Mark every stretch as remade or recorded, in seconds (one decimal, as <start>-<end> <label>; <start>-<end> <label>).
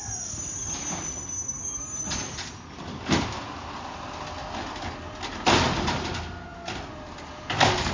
0.0-7.9 recorded